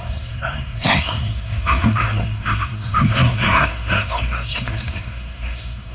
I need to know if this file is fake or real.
fake